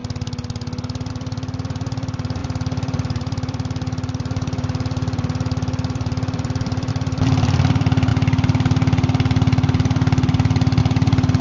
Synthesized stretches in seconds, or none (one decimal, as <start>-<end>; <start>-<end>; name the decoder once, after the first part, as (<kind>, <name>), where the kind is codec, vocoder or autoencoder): 1.1-8.1 (vocoder, BigVGAN v2); 10.8-11.4